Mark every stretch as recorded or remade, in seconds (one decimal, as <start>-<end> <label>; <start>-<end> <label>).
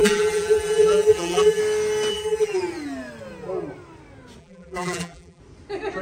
0.0-1.6 remade; 1.6-2.1 recorded; 2.1-2.6 remade; 2.6-4.4 recorded; 4.4-5.4 remade; 5.4-6.0 recorded